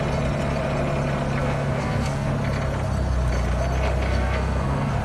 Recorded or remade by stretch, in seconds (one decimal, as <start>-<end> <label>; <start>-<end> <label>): 0.0-1.4 recorded; 1.4-2.3 remade; 2.3-4.1 recorded; 4.1-5.0 remade